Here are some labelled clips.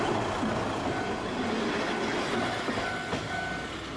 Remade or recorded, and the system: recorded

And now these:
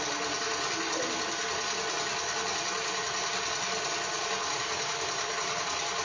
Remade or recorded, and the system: recorded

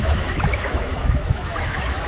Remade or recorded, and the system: remade, autoencoder, DAC-VAE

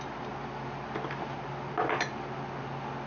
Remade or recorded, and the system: recorded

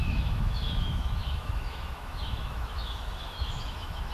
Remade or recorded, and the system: remade, autoencoder, DAC-VAE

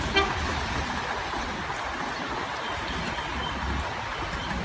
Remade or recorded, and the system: recorded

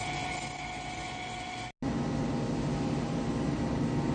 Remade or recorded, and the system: recorded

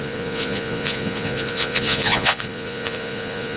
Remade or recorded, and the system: remade, vocoder, Vocos